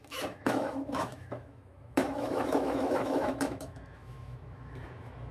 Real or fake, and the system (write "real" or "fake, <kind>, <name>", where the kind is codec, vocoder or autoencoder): fake, autoencoder, DAC-VAE